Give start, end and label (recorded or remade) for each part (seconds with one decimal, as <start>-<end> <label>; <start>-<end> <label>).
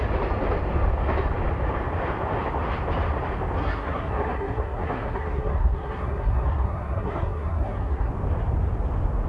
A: 0.0-3.6 recorded; 3.6-8.1 remade; 8.1-9.3 recorded